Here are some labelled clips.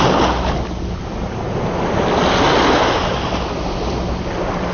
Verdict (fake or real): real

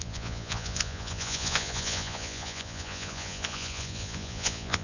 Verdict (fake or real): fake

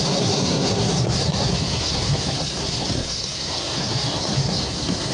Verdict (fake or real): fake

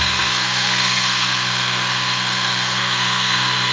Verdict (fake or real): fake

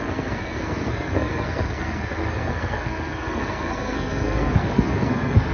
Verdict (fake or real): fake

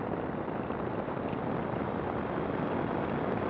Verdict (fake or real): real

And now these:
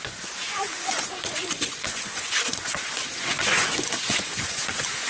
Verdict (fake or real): fake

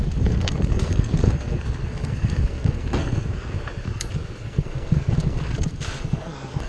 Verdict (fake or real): fake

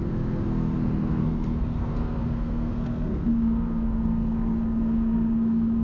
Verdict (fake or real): fake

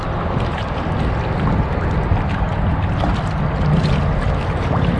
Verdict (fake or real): real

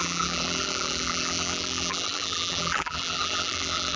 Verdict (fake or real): fake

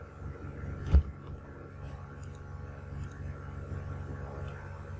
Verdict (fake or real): real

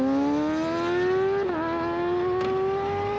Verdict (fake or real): real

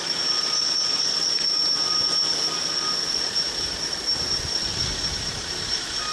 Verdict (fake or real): real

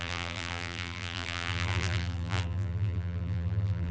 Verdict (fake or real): fake